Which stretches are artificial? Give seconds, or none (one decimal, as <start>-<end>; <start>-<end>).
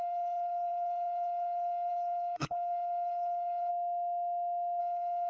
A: 0.0-3.7; 4.8-5.3